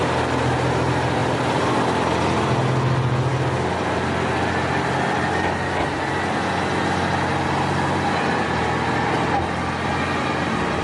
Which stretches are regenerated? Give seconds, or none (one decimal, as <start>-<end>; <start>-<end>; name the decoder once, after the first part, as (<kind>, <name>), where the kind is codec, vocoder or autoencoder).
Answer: 1.2-2.6 (vocoder, BigVGAN v2)